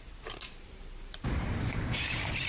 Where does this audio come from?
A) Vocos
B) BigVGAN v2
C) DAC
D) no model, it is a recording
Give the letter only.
B